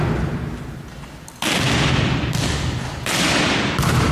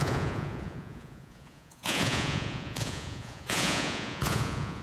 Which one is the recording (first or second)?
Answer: first